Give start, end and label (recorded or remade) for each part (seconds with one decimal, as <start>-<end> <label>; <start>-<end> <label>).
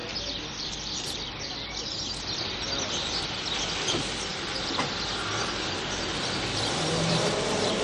0.0-1.7 remade; 1.7-4.3 recorded; 4.3-7.3 remade; 7.3-7.8 recorded